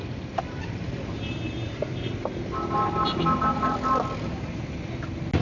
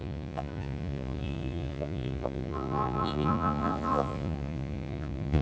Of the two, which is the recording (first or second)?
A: first